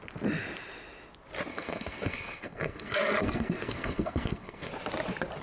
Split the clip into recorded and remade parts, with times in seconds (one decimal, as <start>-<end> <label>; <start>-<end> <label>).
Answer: 0.0-1.5 recorded; 1.5-4.7 remade; 4.7-5.4 recorded